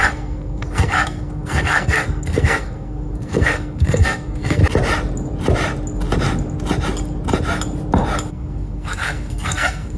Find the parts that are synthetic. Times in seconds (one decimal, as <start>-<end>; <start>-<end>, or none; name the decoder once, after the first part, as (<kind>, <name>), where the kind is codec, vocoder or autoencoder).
0.0-4.6 (codec, SNAC); 8.3-10.0